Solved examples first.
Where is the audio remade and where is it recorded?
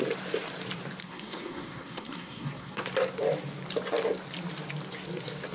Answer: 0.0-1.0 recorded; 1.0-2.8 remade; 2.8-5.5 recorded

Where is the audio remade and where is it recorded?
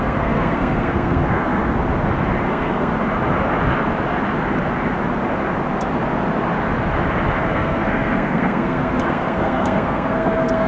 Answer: 0.0-1.6 remade; 1.6-2.5 recorded; 2.5-2.9 remade; 2.9-7.4 recorded; 7.4-10.7 remade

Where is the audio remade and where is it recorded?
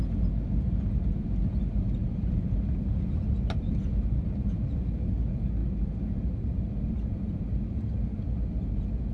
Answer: 0.0-9.1 recorded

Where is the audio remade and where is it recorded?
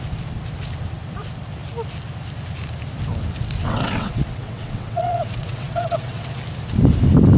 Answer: 0.0-3.6 recorded; 3.6-6.4 remade; 6.4-7.4 recorded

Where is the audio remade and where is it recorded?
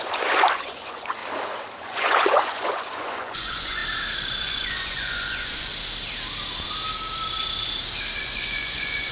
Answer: 0.0-1.2 remade; 1.2-1.8 recorded; 1.8-3.8 remade; 3.8-4.4 recorded; 4.4-5.7 remade; 5.7-8.2 recorded; 8.2-9.1 remade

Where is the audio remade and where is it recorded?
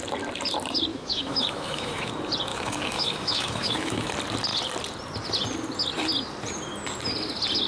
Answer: 0.0-0.9 recorded; 0.9-2.1 remade; 2.1-2.5 recorded; 2.5-4.1 remade; 4.1-7.7 recorded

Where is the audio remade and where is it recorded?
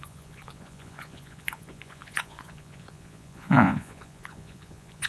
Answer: 0.0-5.1 remade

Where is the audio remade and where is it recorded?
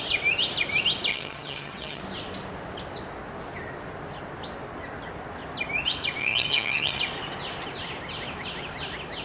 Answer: 0.0-1.1 recorded; 1.1-2.0 remade; 2.0-6.2 recorded; 6.2-7.0 remade; 7.0-9.2 recorded